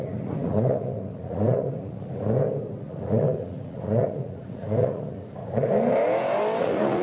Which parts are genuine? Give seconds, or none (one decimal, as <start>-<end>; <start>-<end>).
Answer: 2.1-2.8; 5.4-6.6